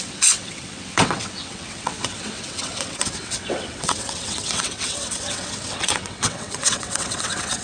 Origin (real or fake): fake